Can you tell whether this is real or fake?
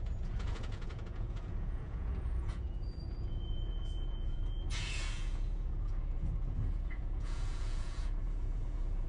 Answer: fake